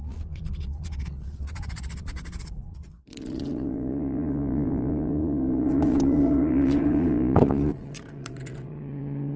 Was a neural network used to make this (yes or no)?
yes